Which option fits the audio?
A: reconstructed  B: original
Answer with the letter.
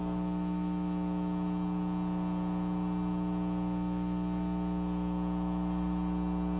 B